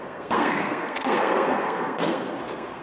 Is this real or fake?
fake